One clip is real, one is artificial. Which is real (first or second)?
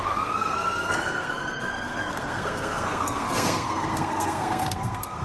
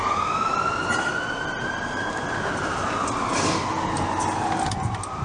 second